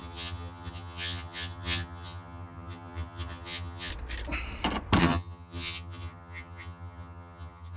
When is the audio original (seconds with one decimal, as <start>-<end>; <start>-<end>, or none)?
3.9-5.0